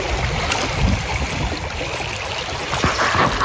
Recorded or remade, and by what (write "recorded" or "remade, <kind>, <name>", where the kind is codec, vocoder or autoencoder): recorded